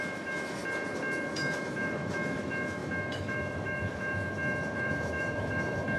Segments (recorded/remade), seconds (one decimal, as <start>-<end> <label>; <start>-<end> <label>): 0.0-0.6 remade; 0.6-1.3 recorded; 1.3-6.0 remade